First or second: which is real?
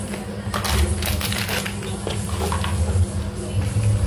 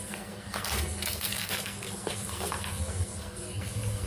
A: first